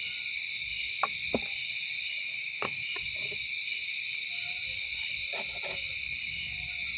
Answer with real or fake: real